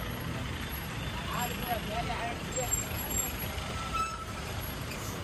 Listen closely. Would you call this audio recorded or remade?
remade